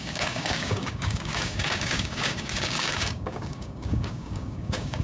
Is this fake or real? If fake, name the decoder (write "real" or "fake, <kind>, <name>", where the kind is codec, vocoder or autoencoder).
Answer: fake, codec, DAC